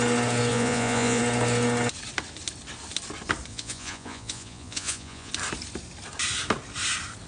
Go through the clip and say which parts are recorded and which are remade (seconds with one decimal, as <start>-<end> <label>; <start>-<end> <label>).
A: 0.0-0.5 recorded; 0.5-1.2 remade; 1.2-3.5 recorded; 3.5-5.3 remade; 5.3-7.3 recorded